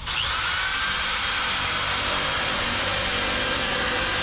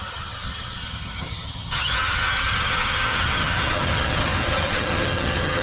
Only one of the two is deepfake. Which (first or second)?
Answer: second